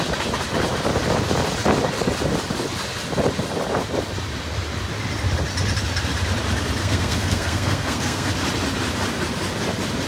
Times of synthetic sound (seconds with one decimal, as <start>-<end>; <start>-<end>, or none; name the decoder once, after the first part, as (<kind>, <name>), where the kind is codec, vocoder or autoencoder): 6.8-8.3 (codec, SNAC)